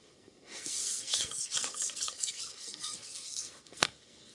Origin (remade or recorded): remade